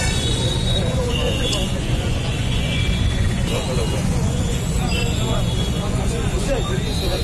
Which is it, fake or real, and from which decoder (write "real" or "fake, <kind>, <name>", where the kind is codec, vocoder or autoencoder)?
fake, vocoder, Vocos